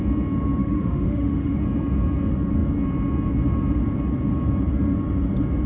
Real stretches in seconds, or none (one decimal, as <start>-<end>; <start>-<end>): 0.0-0.6; 1.6-5.7